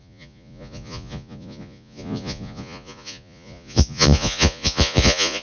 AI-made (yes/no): yes